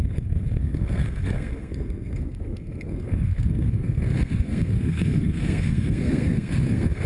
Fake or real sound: fake